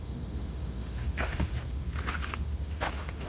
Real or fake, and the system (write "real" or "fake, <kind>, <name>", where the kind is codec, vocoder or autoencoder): fake, autoencoder, DAC-VAE